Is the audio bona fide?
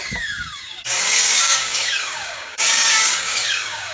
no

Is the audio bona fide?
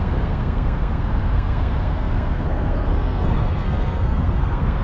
no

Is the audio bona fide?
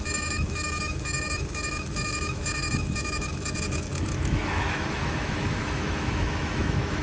no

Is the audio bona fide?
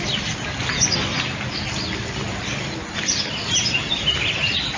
yes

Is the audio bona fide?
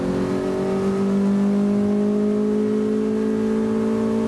yes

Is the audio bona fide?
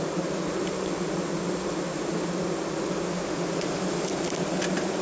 yes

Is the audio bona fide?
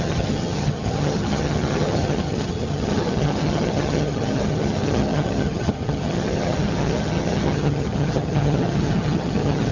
no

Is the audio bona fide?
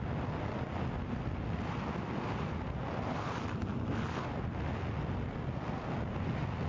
yes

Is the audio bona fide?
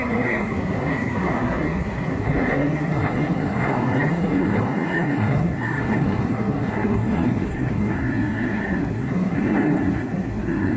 no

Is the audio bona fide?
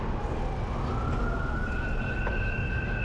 yes